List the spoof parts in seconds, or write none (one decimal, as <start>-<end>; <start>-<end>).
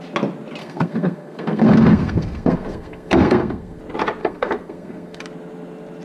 0.6-3.8; 4.2-5.2